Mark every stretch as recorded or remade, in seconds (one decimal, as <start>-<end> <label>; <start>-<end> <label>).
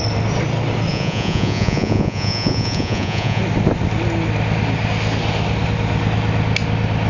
0.0-0.9 recorded; 0.9-3.4 remade; 3.4-7.1 recorded